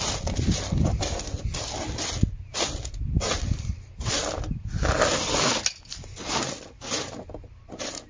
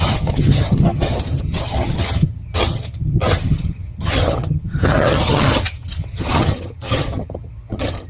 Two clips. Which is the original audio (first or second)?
first